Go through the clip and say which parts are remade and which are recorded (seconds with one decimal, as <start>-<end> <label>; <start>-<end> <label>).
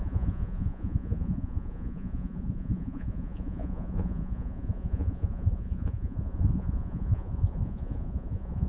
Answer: 0.0-8.7 remade